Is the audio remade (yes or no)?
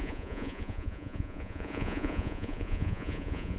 yes